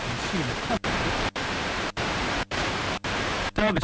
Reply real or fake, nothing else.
fake